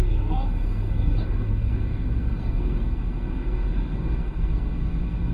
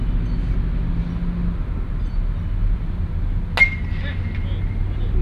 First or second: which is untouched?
second